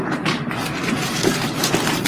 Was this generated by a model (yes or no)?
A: no